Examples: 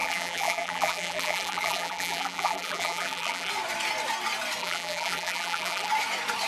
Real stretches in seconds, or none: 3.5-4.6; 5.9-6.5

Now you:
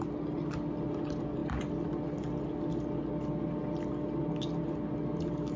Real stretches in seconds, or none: 0.0-5.6

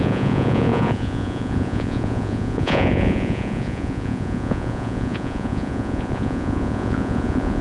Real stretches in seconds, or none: none

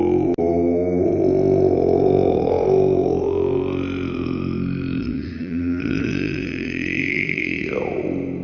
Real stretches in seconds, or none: 0.0-5.0; 7.7-8.4

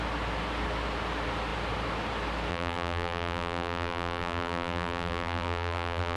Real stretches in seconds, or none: 0.0-2.5

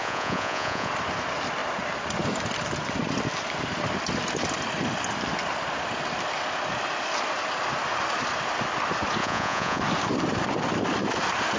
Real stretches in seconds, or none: 0.9-9.2; 9.8-11.6

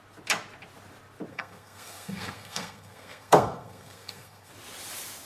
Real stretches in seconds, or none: 0.0-1.3; 4.5-5.3

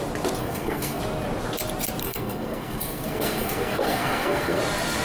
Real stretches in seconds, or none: 0.0-0.4; 1.0-2.0; 4.6-5.0